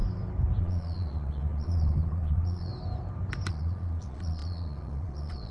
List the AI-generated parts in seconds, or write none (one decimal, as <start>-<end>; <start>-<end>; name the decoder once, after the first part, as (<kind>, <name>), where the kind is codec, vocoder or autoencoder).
0.6-2.7 (vocoder, Vocos); 3.5-5.5